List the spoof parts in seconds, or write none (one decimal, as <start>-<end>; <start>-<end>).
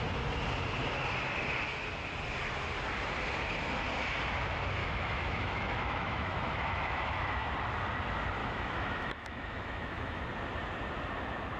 4.8-7.5; 8.4-10.2